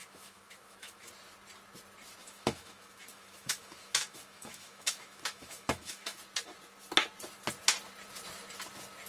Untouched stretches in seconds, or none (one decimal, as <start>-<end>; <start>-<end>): 1.1-2.2; 6.2-9.1